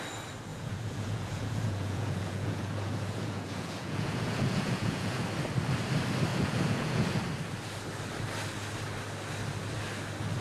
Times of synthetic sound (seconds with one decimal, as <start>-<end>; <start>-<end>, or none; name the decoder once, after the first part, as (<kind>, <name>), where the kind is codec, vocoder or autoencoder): 0.5-5.2 (vocoder, Vocos); 6.3-7.2